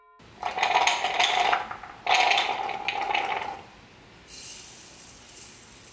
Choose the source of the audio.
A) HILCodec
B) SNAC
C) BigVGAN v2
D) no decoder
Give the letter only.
D